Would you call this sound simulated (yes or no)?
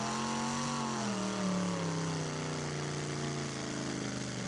no